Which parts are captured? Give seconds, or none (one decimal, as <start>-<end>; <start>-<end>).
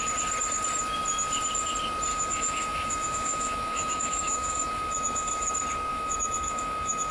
0.0-2.1; 5.5-5.9